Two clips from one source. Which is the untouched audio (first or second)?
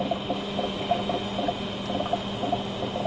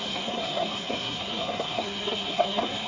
first